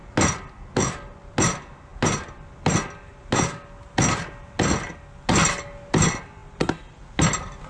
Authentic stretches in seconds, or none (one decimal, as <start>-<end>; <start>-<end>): 0.0-7.7